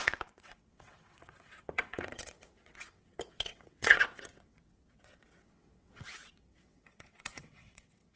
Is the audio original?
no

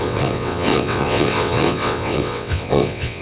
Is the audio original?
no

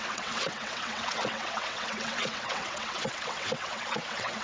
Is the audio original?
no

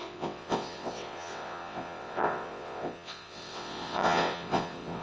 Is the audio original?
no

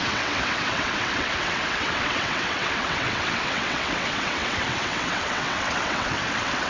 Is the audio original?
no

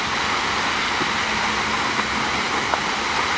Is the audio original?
yes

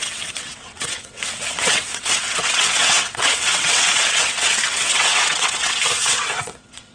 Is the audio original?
no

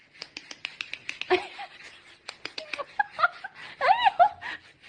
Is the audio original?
yes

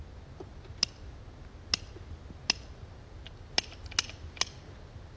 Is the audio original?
yes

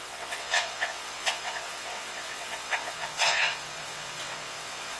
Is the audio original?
no